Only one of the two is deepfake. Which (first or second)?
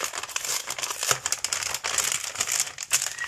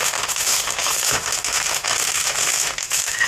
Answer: second